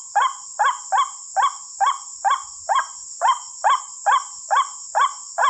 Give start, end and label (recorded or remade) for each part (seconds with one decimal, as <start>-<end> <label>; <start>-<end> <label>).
0.0-5.5 recorded